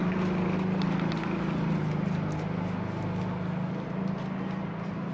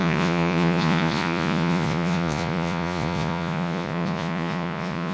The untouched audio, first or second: first